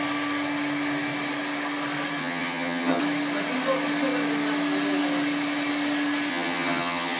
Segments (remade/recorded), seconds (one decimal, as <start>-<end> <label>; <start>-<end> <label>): 0.0-2.2 recorded; 2.2-3.0 remade; 3.0-6.3 recorded; 6.3-7.2 remade